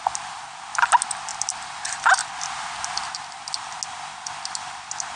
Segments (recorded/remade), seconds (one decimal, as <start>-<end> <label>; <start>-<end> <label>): 0.0-5.2 recorded